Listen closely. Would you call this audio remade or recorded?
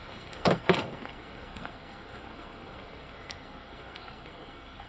remade